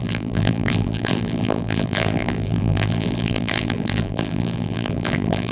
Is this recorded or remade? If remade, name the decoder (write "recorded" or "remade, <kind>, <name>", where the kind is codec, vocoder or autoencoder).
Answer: remade, vocoder, BigVGAN v2